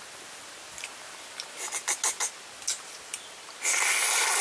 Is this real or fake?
real